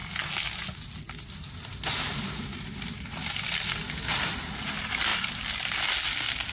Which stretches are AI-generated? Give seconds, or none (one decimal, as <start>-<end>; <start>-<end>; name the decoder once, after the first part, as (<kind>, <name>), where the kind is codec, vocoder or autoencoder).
none